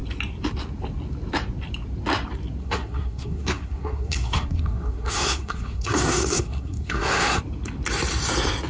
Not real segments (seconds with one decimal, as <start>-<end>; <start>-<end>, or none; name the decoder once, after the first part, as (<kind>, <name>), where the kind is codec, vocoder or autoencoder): 2.6-7.4 (codec, SNAC)